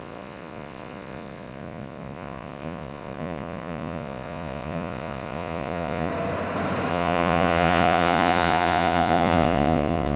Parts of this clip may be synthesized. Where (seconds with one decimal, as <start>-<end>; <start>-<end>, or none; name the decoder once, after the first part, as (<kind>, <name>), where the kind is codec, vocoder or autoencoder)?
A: 0.0-6.1 (vocoder, Vocos); 6.9-10.2